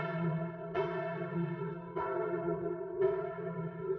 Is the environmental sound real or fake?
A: fake